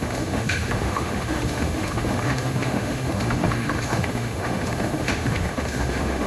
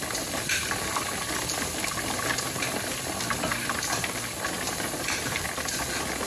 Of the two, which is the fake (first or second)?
first